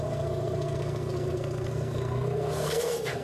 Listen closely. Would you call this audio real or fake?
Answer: fake